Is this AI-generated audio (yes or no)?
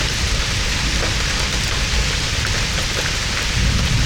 yes